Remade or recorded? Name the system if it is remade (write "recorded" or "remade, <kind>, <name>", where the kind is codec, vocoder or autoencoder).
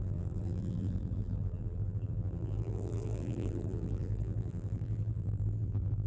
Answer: remade, vocoder, BigVGAN v2